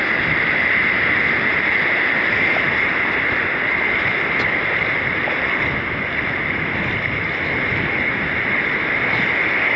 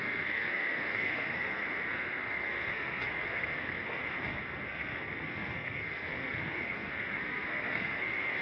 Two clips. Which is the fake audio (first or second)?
second